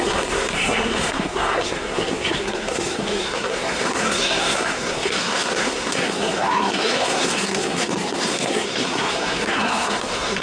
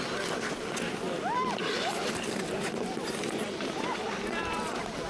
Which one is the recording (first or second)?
second